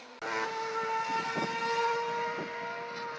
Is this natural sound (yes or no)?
yes